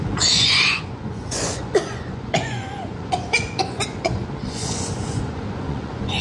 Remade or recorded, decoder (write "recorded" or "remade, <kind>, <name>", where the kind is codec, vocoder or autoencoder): remade, vocoder, Vocos